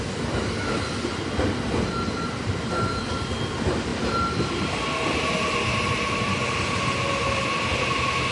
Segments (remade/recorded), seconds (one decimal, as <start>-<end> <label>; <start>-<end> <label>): 0.0-8.3 recorded